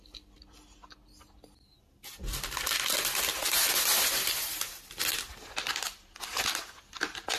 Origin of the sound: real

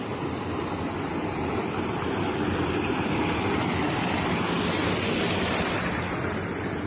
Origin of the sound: real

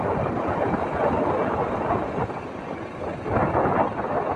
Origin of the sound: real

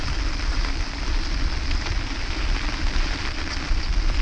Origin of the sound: real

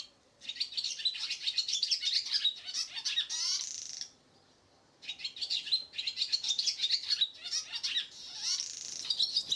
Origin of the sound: real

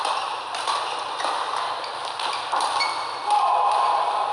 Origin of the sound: real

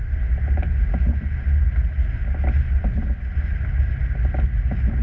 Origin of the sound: real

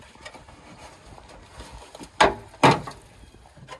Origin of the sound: real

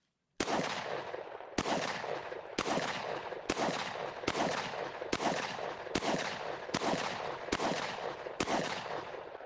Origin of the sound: real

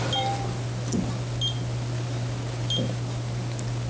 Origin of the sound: real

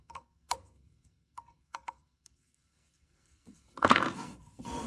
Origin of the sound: fake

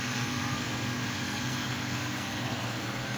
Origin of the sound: fake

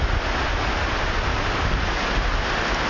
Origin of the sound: real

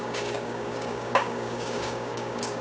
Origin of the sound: fake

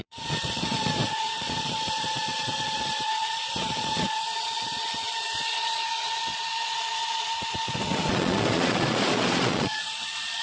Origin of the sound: fake